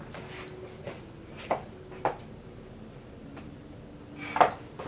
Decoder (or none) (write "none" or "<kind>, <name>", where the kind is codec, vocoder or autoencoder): none